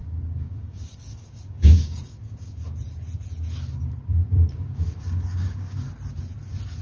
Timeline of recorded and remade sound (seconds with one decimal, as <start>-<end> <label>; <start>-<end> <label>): 0.0-2.6 remade; 2.6-4.2 recorded; 4.2-5.9 remade; 5.9-6.8 recorded